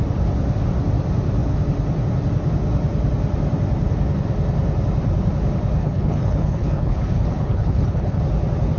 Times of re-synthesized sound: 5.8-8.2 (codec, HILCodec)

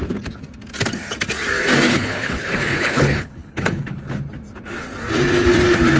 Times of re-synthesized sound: 1.9-4.0 (codec, HILCodec)

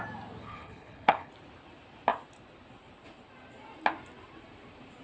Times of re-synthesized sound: 0.4-1.3 (codec, HILCodec)

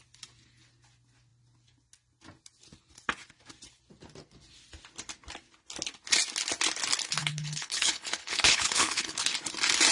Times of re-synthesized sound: 7.2-9.3 (codec, HILCodec)